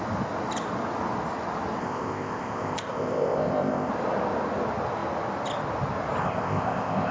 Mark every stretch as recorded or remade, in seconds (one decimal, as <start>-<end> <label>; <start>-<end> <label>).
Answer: 0.0-1.8 recorded; 1.8-3.9 remade; 3.9-6.2 recorded; 6.2-7.1 remade